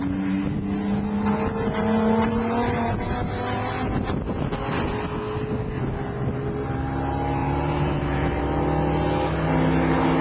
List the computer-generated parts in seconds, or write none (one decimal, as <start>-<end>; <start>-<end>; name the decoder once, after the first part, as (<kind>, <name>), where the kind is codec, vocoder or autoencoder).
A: 7.4-8.4 (vocoder, BigVGAN v2)